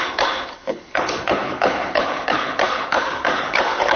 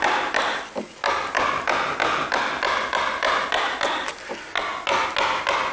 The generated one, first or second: first